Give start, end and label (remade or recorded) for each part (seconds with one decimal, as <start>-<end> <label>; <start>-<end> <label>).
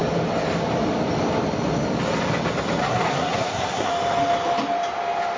0.0-2.8 recorded; 2.8-3.9 remade; 3.9-5.4 recorded